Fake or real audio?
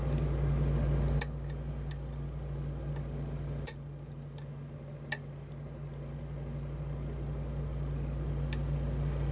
real